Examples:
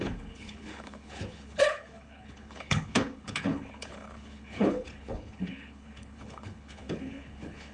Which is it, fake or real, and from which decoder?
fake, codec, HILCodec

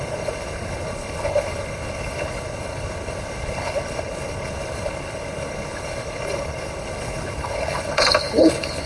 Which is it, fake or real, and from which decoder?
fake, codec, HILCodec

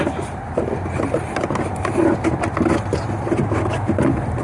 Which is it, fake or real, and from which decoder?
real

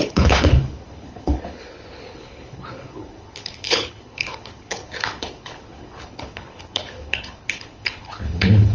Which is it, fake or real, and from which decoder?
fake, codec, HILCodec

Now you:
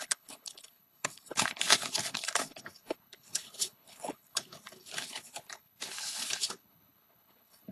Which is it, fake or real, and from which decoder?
fake, codec, HILCodec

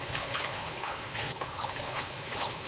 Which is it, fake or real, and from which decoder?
fake, codec, HILCodec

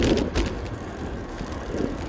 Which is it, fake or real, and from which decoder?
real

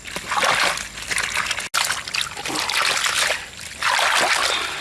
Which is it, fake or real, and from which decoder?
real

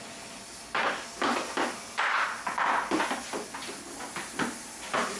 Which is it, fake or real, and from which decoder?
real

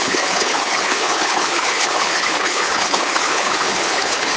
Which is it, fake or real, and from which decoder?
fake, codec, HILCodec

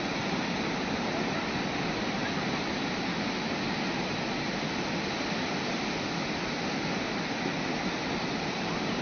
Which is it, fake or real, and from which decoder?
real